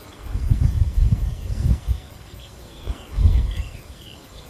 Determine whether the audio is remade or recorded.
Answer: remade